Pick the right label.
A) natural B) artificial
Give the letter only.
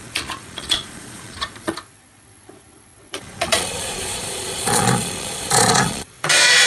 B